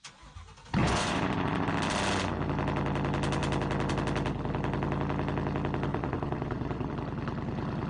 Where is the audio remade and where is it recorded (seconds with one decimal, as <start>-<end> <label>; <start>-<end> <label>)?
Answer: 0.0-0.8 recorded; 0.8-1.7 remade; 1.7-5.9 recorded; 5.9-6.9 remade; 6.9-7.9 recorded

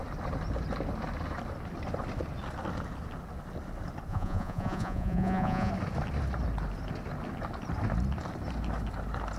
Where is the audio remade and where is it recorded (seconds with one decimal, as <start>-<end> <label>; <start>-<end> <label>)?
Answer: 0.0-4.1 recorded; 4.1-5.7 remade; 5.7-9.4 recorded

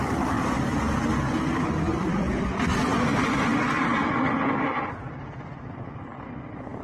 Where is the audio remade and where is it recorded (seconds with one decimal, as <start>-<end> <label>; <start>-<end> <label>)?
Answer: 0.0-6.8 recorded